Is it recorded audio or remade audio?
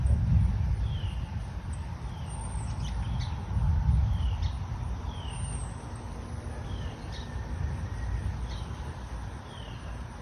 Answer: recorded